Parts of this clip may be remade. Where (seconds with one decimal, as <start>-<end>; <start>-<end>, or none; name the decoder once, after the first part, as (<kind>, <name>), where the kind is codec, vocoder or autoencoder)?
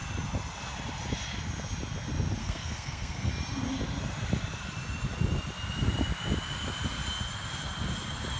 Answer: 2.4-3.3 (codec, SNAC)